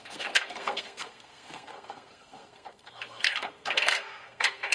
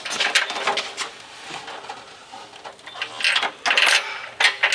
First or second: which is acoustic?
second